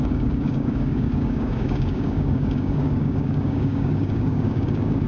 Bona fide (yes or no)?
no